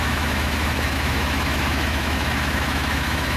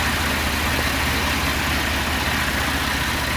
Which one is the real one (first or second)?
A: second